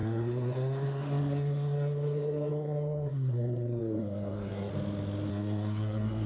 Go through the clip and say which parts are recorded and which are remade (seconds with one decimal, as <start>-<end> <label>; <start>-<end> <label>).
0.0-4.7 remade; 4.7-5.3 recorded; 5.3-6.3 remade